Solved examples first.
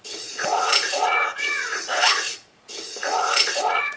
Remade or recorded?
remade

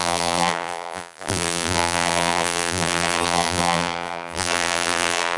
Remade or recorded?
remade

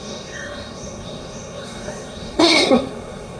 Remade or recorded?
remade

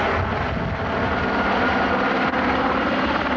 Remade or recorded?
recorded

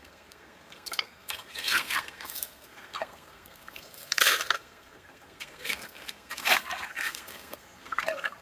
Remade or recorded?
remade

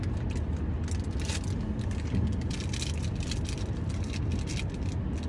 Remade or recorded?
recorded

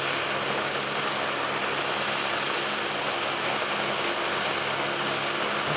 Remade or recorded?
recorded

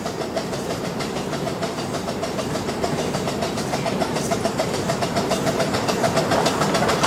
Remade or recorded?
remade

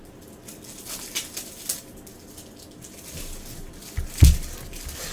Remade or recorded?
recorded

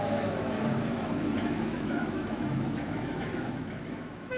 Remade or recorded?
remade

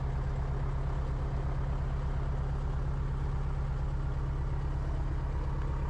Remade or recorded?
recorded